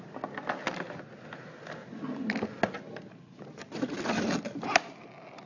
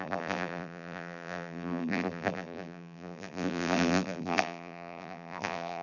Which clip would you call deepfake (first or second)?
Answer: second